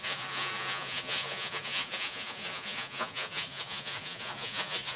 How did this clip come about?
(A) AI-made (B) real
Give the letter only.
A